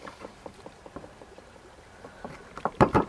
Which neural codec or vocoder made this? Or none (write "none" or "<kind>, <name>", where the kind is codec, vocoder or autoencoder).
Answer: vocoder, BigVGAN v2